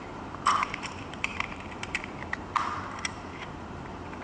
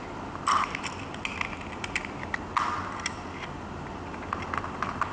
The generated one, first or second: first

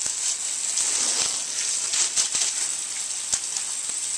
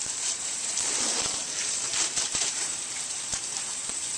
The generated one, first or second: second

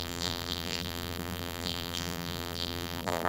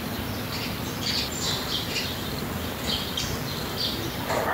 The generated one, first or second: first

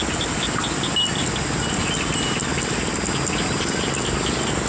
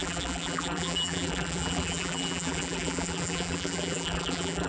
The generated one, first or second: second